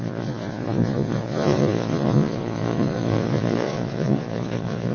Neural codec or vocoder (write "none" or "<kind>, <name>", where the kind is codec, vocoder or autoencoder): vocoder, Vocos